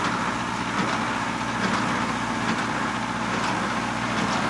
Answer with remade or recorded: recorded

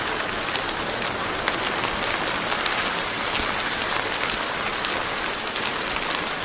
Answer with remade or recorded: recorded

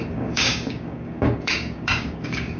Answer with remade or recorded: remade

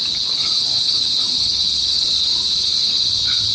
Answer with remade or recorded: remade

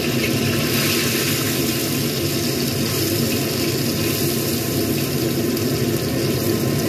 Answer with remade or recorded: recorded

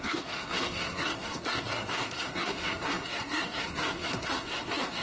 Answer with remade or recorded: remade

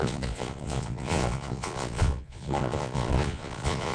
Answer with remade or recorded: remade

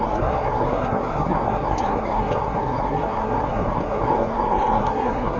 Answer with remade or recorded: remade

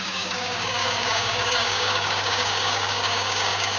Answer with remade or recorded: remade